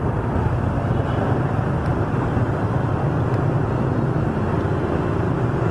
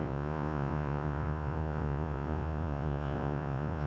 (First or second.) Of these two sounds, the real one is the first